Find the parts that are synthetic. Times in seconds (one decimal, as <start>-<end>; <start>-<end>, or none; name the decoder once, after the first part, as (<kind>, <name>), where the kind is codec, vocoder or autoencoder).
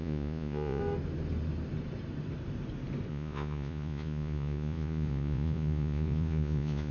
0.0-0.8 (vocoder, Vocos); 3.1-6.9